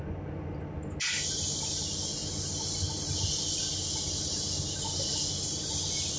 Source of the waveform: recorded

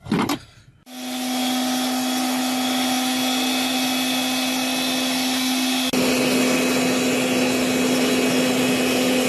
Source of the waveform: recorded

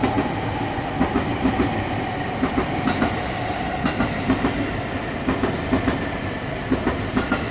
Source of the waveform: recorded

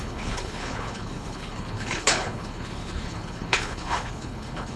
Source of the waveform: remade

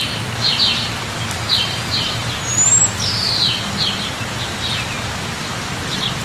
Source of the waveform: recorded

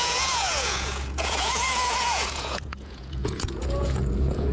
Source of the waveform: remade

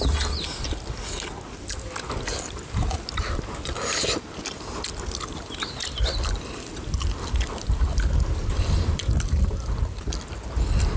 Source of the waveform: recorded